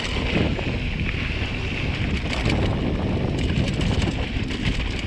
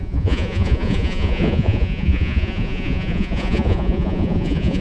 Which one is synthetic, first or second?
second